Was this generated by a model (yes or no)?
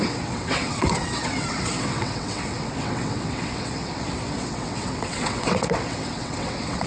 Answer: yes